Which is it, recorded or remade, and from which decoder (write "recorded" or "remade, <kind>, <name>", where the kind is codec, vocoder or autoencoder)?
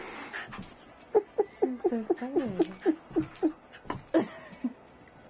recorded